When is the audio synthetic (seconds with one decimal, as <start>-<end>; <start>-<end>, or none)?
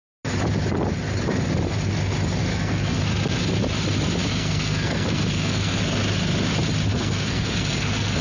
2.5-3.0; 4.2-5.8; 6.9-8.2